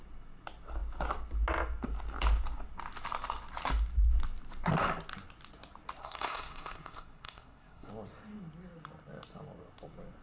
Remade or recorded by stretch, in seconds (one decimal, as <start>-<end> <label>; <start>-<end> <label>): 0.0-6.0 recorded; 6.0-7.9 remade; 7.9-10.2 recorded